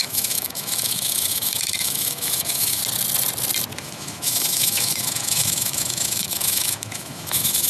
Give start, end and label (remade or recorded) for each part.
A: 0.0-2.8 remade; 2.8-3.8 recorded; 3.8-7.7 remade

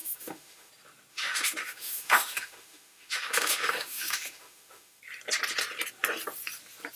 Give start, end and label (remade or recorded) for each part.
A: 0.0-0.7 remade; 0.7-1.1 recorded; 1.1-5.0 remade; 5.0-7.0 recorded